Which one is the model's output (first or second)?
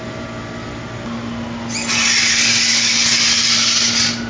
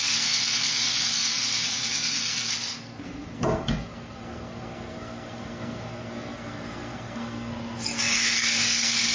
second